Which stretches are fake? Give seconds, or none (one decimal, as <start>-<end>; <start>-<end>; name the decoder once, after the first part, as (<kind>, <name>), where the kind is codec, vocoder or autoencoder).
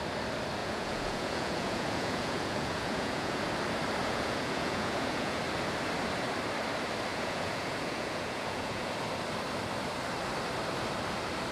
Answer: 0.6-3.4 (vocoder, Vocos); 4.0-5.4; 7.1-8.9